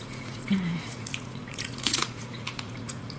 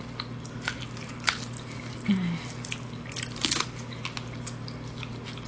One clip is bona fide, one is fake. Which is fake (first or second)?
first